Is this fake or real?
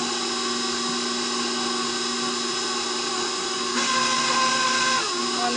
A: real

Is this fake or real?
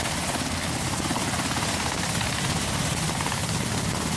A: real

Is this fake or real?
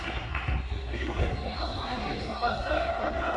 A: fake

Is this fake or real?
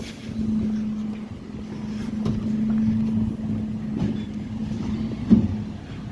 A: real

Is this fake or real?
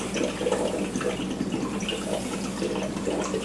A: real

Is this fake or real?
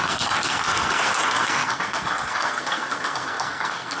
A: fake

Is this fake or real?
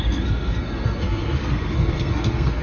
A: fake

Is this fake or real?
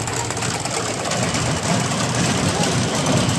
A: real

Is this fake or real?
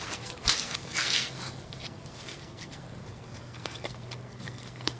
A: fake